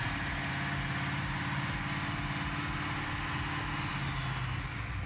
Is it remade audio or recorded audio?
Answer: recorded